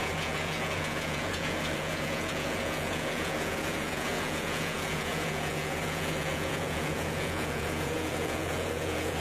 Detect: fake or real fake